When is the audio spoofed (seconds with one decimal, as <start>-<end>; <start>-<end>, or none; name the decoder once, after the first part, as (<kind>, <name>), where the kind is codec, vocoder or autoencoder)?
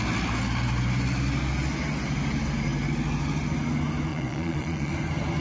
4.1-4.9 (vocoder, Vocos)